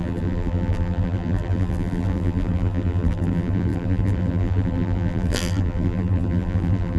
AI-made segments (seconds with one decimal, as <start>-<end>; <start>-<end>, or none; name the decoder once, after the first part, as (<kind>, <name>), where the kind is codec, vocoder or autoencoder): 0.0-7.0 (vocoder, BigVGAN v2)